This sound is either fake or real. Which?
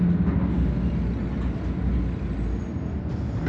real